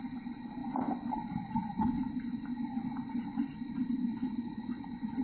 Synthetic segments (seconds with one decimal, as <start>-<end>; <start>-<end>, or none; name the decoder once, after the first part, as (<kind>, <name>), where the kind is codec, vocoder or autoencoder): 4.1-4.8 (vocoder, Vocos)